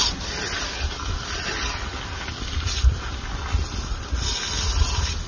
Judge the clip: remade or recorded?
recorded